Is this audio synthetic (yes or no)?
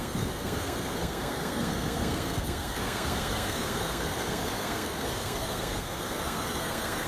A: yes